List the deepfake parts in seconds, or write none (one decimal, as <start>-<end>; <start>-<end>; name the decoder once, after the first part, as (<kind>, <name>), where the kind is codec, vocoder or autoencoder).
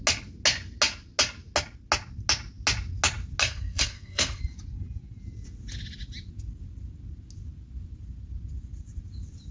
3.4-4.4 (codec, SNAC)